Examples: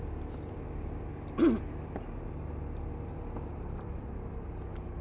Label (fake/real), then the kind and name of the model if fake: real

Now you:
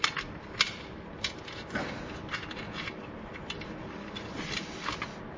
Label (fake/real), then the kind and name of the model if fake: real